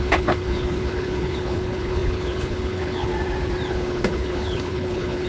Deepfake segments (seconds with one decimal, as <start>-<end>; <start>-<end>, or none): 0.0-3.1; 3.7-5.3